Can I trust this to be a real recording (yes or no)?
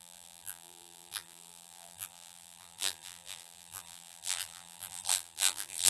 no